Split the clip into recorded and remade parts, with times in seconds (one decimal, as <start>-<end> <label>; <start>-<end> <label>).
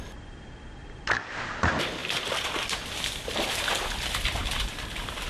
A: 0.0-5.3 recorded